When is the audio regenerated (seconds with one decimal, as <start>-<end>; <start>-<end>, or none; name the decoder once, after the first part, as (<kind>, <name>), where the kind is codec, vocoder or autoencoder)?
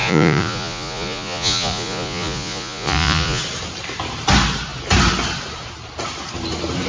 0.0-3.4 (vocoder, Vocos)